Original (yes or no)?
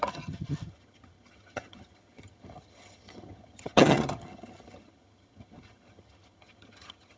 no